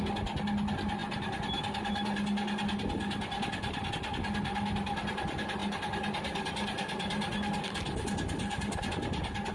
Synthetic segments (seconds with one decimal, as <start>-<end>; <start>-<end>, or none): none